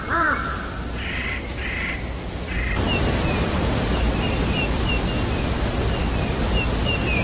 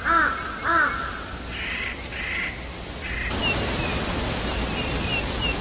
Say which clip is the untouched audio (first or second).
second